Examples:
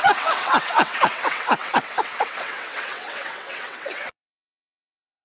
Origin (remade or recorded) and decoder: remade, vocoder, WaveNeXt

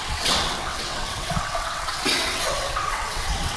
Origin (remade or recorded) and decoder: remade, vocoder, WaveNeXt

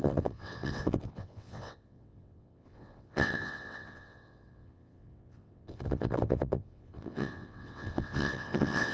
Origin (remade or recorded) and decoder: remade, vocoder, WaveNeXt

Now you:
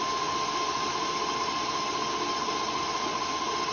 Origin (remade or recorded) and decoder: recorded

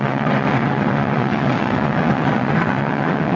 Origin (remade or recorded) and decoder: remade, vocoder, WaveNeXt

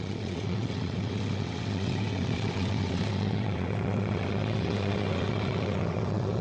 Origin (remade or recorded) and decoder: remade, vocoder, WaveNeXt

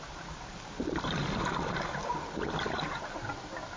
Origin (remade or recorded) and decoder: recorded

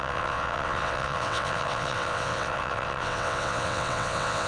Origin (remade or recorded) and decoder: remade, vocoder, WaveNeXt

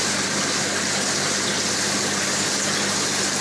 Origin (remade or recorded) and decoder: recorded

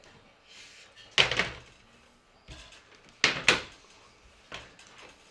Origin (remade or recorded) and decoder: recorded